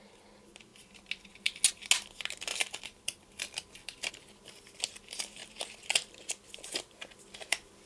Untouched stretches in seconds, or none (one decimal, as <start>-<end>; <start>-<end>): 0.0-2.5; 4.1-7.9

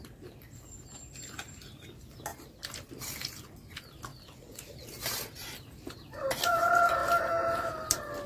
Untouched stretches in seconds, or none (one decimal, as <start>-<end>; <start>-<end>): 0.0-2.3; 2.9-4.1; 4.8-8.3